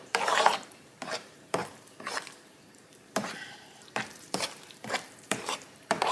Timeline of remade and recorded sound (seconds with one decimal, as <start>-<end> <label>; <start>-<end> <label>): 0.0-6.1 remade